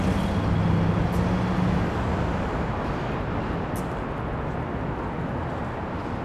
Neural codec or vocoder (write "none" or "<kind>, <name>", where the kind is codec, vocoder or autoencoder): none